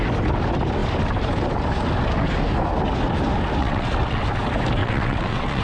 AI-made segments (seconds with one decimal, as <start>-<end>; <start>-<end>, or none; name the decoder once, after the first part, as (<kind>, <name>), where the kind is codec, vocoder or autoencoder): 3.6-4.2 (vocoder, WaveNeXt); 4.8-5.6

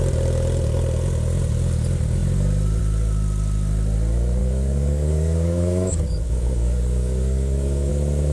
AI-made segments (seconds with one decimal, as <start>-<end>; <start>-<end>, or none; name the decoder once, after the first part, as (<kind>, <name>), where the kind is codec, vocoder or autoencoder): 4.4-7.9 (codec, DAC)